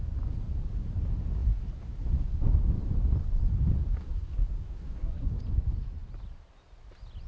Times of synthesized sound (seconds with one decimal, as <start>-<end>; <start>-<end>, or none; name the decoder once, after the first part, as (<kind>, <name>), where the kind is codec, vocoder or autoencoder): 4.0-5.4 (codec, SNAC)